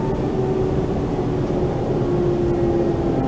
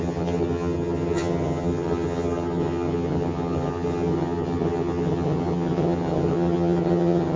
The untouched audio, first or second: first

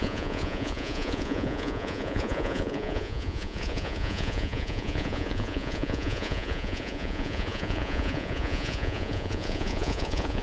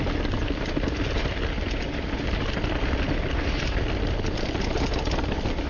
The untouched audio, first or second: second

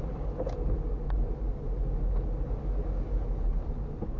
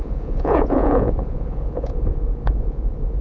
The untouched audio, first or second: first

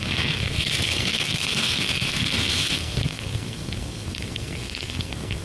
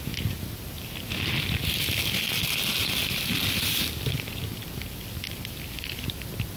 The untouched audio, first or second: second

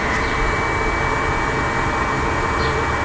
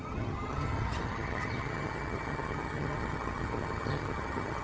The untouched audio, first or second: first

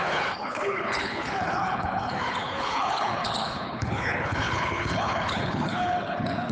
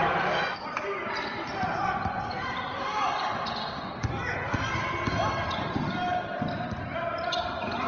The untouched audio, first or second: second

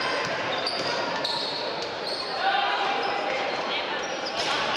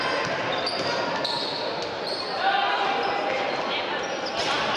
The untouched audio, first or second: second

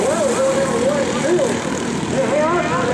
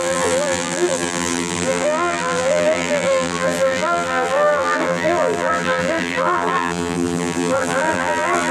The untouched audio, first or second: first